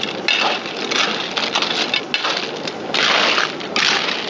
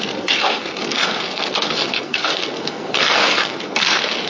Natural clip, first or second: first